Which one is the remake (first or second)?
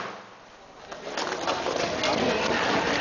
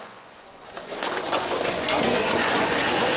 second